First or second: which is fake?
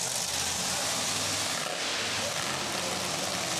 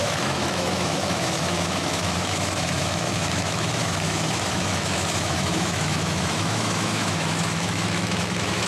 second